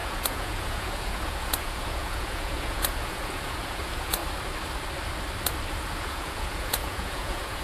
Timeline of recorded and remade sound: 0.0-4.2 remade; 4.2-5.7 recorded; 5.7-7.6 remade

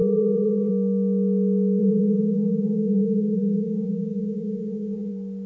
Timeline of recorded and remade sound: 0.0-0.7 remade; 0.7-1.8 recorded; 1.8-5.1 remade; 5.1-5.5 recorded

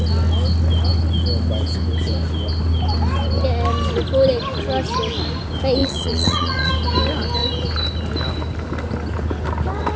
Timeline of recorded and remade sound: 0.0-5.8 recorded; 5.8-6.7 remade; 6.7-10.0 recorded

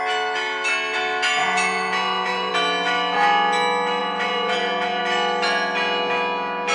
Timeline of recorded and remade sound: 0.0-1.4 recorded; 1.4-2.5 remade; 2.5-4.0 recorded; 4.0-5.0 remade; 5.0-6.7 recorded

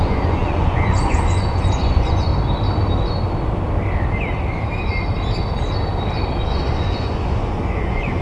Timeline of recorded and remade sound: 0.0-2.3 remade; 2.3-6.5 recorded; 6.5-8.2 remade